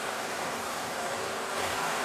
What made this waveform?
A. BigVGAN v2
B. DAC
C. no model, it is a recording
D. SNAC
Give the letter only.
B